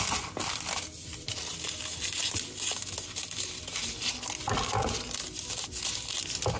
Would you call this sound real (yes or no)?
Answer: yes